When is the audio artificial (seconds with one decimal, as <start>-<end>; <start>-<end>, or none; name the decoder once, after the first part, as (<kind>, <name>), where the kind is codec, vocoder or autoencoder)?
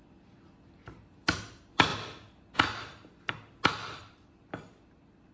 none